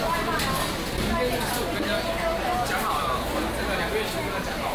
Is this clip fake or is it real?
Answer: real